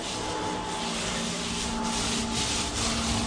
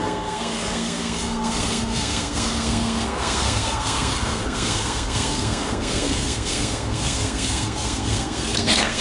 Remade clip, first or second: second